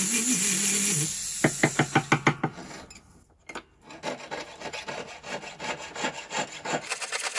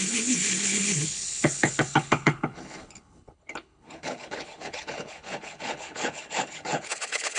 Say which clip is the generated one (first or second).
second